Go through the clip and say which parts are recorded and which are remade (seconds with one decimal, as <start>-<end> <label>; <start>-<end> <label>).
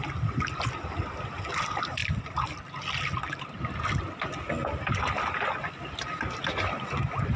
0.0-7.4 recorded